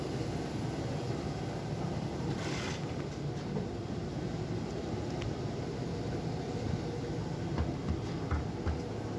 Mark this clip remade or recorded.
recorded